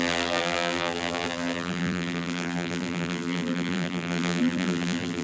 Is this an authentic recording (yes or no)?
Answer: no